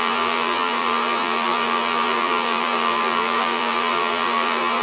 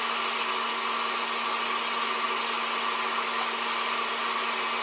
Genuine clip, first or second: second